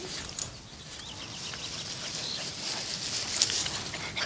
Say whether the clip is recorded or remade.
recorded